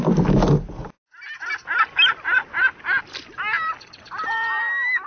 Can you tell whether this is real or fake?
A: real